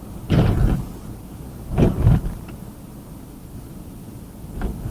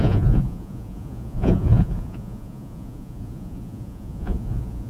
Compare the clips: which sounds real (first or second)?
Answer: first